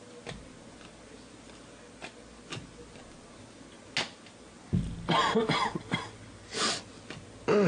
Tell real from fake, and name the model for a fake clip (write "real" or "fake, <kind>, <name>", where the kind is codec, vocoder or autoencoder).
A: real